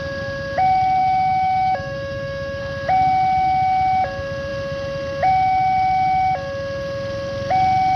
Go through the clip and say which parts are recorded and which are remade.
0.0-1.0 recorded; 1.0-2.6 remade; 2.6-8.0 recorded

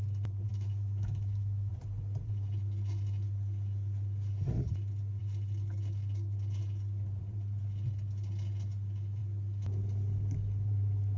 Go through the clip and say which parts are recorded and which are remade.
0.0-0.5 recorded; 0.5-1.7 remade; 1.7-11.2 recorded

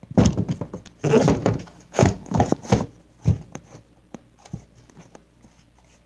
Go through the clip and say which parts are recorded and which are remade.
0.0-1.4 recorded; 1.4-2.6 remade; 2.6-6.1 recorded

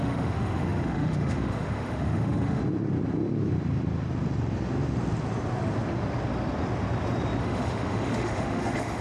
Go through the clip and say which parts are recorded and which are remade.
0.0-2.6 remade; 2.6-7.4 recorded; 7.4-9.0 remade

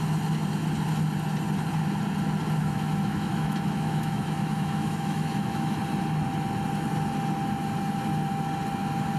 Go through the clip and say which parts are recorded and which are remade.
0.0-2.6 recorded; 2.6-5.8 remade; 5.8-9.2 recorded

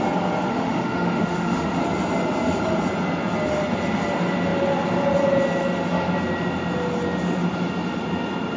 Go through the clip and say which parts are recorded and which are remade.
0.0-0.5 recorded; 0.5-1.8 remade; 1.8-8.6 recorded